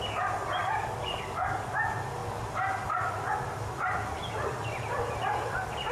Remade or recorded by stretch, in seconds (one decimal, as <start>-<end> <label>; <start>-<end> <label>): 0.0-0.6 recorded; 0.6-1.7 remade; 1.7-5.9 recorded